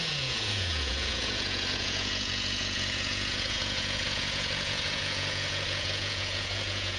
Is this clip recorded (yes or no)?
no